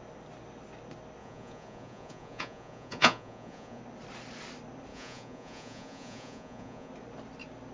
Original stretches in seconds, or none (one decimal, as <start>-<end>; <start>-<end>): 0.0-1.2; 3.8-4.9; 6.9-7.7